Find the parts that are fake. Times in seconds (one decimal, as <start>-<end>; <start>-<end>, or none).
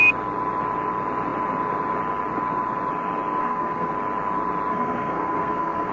3.4-3.9; 4.7-5.9